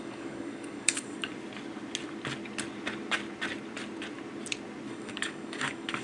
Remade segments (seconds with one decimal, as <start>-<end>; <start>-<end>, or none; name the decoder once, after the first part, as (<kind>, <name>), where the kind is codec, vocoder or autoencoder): 0.0-1.3 (codec, DAC); 4.9-6.0